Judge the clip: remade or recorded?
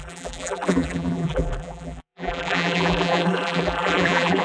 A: remade